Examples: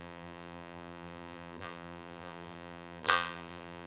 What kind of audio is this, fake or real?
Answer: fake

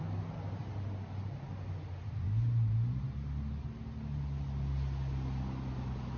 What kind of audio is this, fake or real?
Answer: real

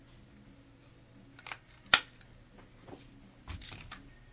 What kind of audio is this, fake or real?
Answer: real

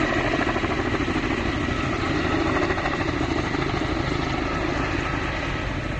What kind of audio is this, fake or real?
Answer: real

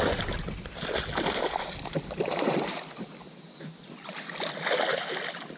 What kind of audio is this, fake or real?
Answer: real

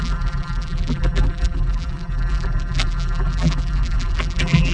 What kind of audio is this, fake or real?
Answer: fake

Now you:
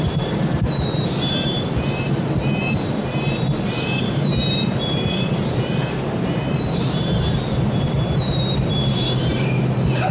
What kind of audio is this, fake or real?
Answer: fake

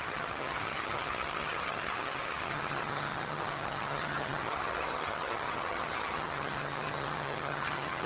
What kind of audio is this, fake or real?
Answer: fake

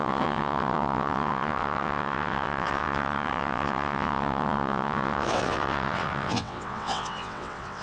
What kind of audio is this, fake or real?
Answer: fake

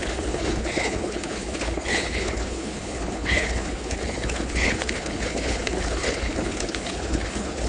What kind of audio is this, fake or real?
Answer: fake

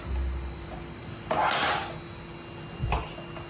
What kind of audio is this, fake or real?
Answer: real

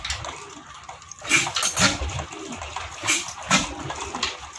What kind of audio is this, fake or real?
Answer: real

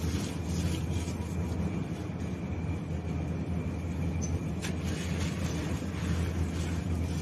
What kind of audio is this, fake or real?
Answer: real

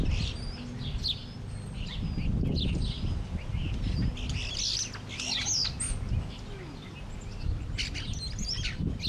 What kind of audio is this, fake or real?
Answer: real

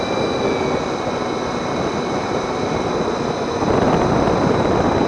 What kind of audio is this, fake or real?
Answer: real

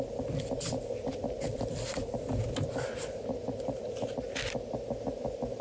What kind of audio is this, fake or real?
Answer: real